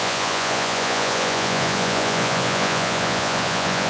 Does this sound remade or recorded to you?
remade